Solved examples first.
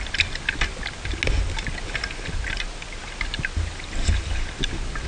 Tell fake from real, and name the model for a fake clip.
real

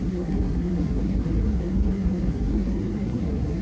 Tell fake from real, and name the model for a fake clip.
fake, codec, SNAC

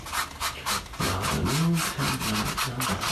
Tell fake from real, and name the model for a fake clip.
real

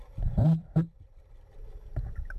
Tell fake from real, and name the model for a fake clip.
fake, vocoder, BigVGAN v2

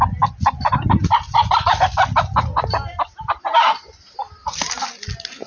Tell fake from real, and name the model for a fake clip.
real